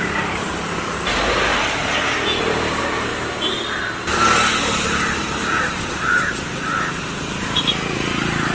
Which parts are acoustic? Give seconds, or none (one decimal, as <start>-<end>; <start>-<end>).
1.5-2.4; 3.1-4.6